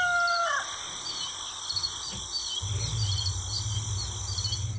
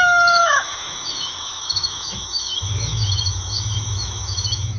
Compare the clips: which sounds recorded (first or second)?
first